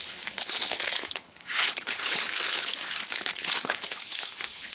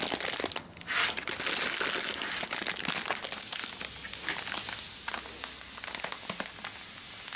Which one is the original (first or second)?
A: second